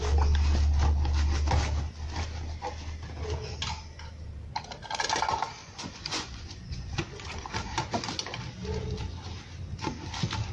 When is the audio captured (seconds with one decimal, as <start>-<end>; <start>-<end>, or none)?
0.0-5.6; 7.2-10.5